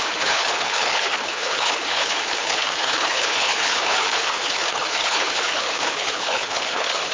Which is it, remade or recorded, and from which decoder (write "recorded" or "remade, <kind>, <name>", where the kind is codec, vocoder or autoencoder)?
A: remade, codec, HILCodec